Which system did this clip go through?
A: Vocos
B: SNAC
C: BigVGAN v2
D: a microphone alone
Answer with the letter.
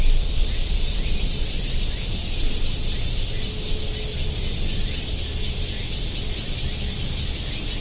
D